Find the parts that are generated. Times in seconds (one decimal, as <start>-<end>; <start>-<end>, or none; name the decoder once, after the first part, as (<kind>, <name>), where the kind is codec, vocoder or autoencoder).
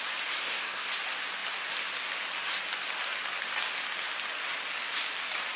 0.4-0.9 (codec, SNAC)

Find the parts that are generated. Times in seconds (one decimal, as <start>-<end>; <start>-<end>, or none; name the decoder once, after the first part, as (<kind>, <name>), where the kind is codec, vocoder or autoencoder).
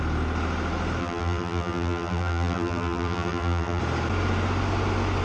1.0-3.8 (vocoder, BigVGAN v2)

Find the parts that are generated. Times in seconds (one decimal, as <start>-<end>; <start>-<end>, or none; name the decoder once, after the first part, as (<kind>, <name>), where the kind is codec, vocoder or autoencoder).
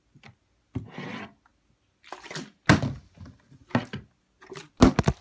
none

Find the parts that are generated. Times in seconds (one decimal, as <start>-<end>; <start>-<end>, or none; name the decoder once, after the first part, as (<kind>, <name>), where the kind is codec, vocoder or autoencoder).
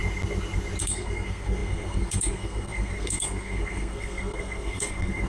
0.8-5.3 (codec, SNAC)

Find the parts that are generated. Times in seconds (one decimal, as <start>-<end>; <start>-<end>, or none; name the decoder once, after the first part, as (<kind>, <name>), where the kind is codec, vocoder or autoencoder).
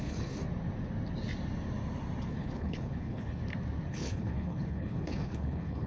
0.0-0.4 (codec, HILCodec); 2.3-3.4; 3.9-5.9